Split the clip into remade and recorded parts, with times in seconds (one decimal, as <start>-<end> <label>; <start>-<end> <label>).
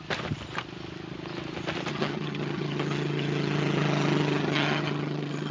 0.0-1.9 recorded; 1.9-5.5 remade